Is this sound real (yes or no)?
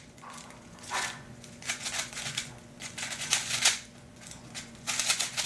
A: no